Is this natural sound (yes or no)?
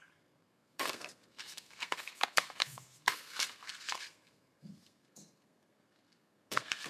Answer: no